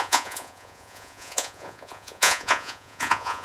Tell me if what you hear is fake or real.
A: fake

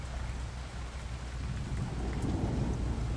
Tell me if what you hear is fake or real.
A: real